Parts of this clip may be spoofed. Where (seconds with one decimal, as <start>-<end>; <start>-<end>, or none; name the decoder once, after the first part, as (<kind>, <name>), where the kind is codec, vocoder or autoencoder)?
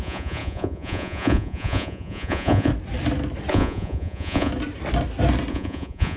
0.0-2.7 (vocoder, Vocos); 3.5-4.5; 5.5-6.2